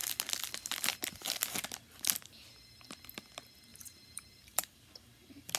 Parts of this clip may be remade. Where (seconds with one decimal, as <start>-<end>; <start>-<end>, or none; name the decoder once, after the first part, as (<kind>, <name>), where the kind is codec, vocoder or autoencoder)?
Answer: 3.7-4.8 (vocoder, BigVGAN v2)